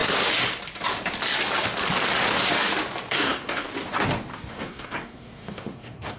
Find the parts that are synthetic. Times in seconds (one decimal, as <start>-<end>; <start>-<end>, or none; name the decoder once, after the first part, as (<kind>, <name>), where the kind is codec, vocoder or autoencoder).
3.1-3.7 (codec, SNAC); 4.5-6.2